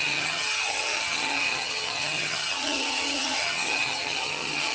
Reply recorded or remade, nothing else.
remade